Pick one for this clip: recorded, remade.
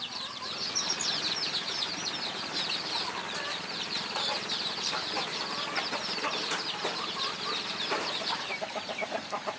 remade